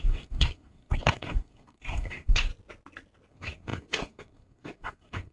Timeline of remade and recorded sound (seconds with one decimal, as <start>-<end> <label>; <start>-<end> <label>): 0.0-2.5 remade; 2.5-3.3 recorded; 3.3-5.3 remade